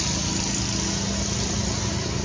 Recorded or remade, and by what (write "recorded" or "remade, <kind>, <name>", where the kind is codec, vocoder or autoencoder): recorded